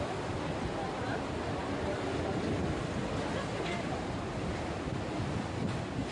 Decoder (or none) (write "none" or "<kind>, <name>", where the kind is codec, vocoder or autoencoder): none